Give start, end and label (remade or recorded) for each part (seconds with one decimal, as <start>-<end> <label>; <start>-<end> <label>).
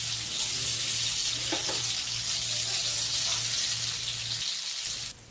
0.0-1.2 recorded; 1.2-1.8 remade; 1.8-5.3 recorded